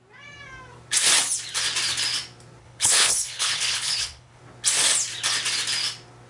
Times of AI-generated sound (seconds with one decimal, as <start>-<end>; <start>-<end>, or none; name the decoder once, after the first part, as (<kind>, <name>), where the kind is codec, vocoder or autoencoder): 2.6-4.4 (codec, HILCodec)